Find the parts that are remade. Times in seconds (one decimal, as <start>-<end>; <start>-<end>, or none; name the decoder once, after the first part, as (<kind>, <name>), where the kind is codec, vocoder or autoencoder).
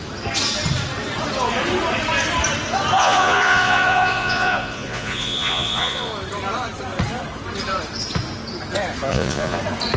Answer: 3.0-6.1 (vocoder, Vocos); 9.1-9.6